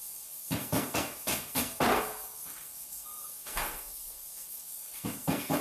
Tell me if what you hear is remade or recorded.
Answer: remade